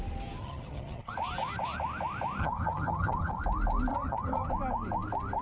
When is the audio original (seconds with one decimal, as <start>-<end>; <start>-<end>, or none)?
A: 0.0-0.4; 1.1-2.4; 3.4-3.9; 4.5-5.4

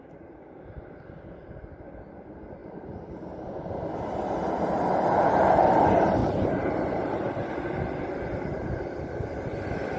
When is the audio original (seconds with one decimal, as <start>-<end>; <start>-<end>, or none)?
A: 0.0-6.2; 7.5-10.0

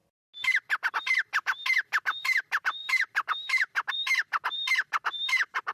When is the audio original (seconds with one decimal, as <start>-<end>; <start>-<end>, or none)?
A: 0.0-0.9

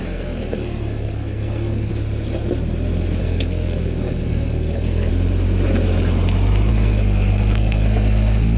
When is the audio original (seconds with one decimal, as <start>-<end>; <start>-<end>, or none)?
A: 1.9-3.2; 5.1-6.7

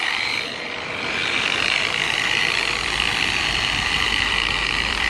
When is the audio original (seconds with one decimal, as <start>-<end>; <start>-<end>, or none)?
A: none

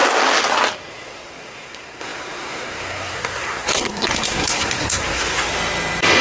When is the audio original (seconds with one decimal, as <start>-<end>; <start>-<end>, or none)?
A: 0.0-0.9; 5.5-6.2

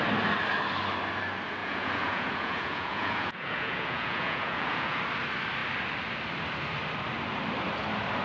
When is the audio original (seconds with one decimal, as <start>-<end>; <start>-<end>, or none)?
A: 0.0-1.6; 5.0-8.2